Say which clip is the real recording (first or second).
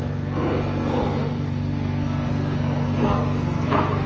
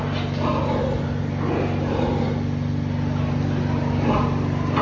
second